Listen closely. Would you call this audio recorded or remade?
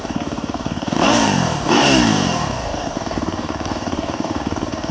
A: remade